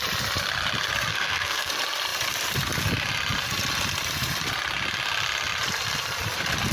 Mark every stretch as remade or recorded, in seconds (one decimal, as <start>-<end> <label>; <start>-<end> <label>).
0.0-1.1 recorded; 1.1-1.7 remade; 1.7-6.7 recorded